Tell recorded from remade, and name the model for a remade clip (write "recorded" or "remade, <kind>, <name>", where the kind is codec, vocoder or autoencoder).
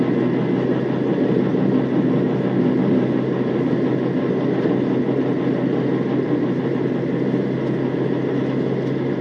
recorded